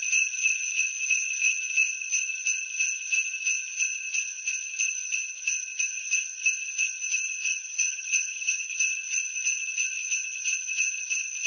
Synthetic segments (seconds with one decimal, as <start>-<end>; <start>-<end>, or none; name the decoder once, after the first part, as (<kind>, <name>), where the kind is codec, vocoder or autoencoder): 7.5-8.7 (vocoder, HiFi-GAN)